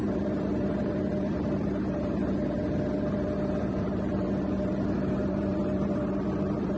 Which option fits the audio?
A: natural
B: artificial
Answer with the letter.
B